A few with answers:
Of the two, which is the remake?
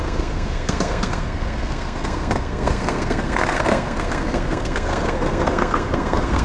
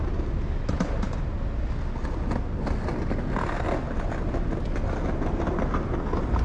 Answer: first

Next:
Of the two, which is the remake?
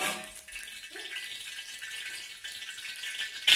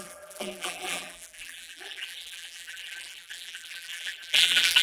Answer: second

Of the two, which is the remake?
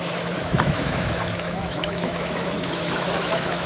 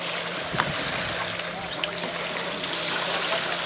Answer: first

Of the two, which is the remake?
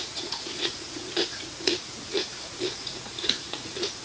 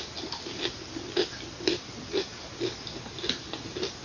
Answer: first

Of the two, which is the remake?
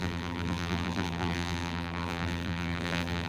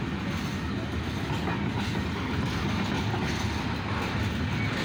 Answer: first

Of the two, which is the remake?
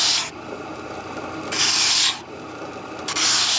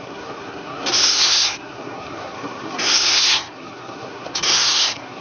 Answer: second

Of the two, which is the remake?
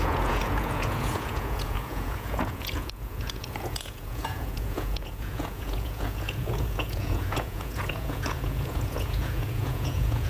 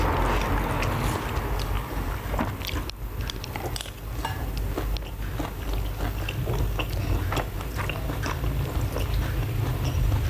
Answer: first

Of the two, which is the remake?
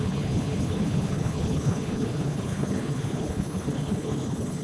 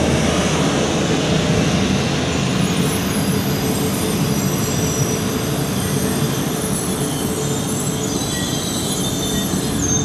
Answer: first